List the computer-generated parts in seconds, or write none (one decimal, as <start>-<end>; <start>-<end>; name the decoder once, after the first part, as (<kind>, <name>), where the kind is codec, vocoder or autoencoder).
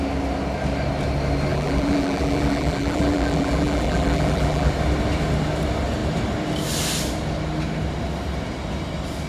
1.5-4.7 (vocoder, BigVGAN v2)